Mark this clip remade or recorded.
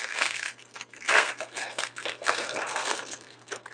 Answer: remade